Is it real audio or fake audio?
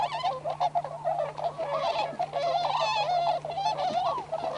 real